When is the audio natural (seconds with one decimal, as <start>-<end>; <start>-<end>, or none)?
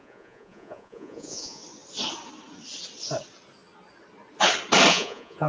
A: 1.6-4.9